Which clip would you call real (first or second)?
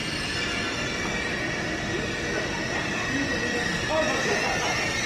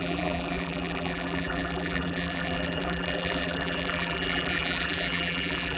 first